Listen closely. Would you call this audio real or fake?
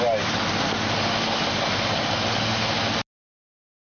real